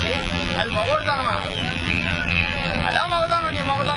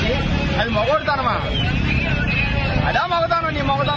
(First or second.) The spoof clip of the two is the first